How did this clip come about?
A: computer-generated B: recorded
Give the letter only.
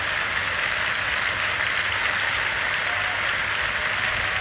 B